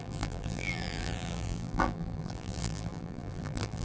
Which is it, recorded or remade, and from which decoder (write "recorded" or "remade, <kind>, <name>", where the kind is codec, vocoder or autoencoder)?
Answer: remade, vocoder, BigVGAN v2